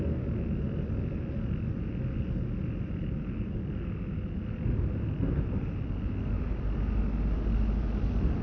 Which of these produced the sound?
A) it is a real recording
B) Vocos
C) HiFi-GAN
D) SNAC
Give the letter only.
A